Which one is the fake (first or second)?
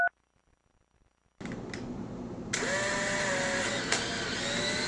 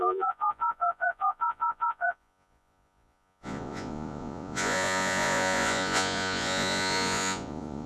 second